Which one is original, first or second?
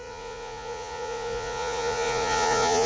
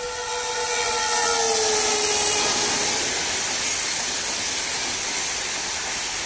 second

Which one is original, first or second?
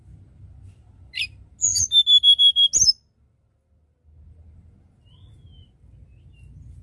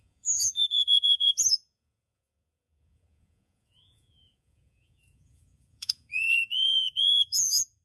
first